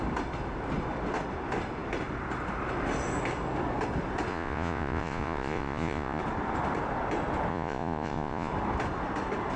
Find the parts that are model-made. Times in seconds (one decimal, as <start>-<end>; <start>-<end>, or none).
4.3-6.2; 7.5-8.5